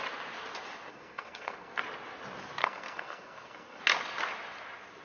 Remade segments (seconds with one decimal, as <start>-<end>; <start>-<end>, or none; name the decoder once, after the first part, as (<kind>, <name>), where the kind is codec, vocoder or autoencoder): 0.9-1.8 (codec, SNAC); 2.6-3.8